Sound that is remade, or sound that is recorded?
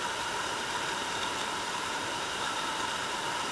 remade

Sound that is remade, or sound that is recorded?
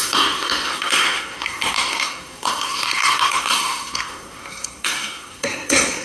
remade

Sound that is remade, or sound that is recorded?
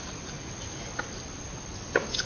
recorded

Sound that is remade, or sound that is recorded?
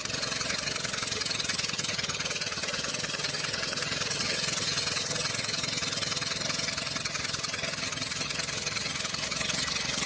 remade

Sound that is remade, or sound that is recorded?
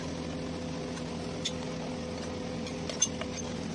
recorded